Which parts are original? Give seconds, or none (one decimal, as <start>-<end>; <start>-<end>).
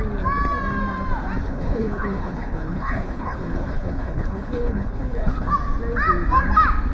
0.0-1.4; 5.5-6.9